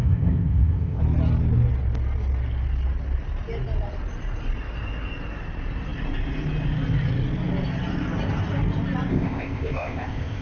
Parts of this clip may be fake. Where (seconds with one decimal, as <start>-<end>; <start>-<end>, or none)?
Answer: 0.0-1.0; 9.1-10.4